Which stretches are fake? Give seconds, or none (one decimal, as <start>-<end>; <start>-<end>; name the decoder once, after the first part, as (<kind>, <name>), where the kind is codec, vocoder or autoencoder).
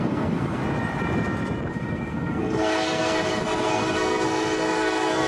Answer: 0.0-0.6 (codec, SNAC); 1.7-5.3